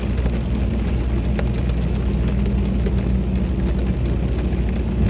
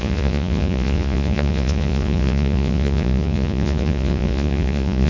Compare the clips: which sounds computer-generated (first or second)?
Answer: second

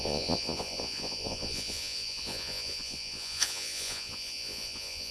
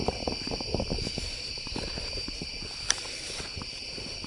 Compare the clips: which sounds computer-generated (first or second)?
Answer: first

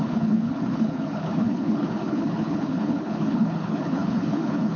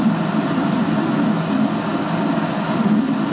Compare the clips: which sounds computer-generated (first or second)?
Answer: first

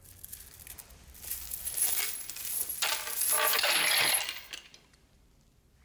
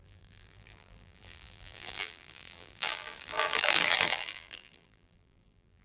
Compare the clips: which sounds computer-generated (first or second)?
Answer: second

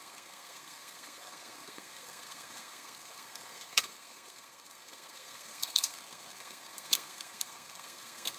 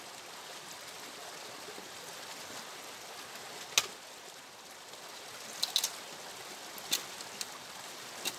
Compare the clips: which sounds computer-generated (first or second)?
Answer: first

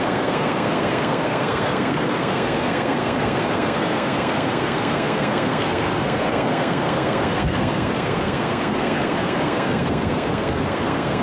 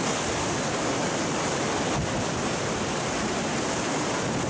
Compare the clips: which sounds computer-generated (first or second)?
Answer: first